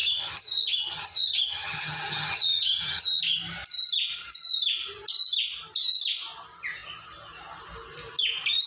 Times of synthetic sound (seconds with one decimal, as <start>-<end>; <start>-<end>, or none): 0.0-3.2